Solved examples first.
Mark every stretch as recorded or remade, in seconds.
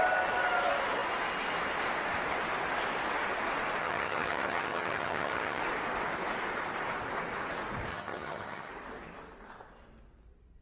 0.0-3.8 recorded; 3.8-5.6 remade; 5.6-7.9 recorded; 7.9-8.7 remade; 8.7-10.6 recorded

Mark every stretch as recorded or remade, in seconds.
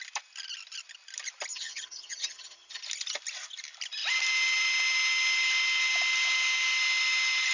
0.0-1.5 recorded; 1.5-2.8 remade; 2.8-7.5 recorded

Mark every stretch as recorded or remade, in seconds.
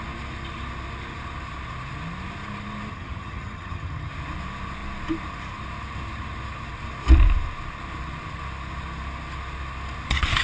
0.0-2.9 recorded; 2.9-4.1 remade; 4.1-10.4 recorded